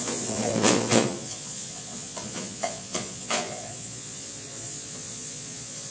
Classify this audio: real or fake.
fake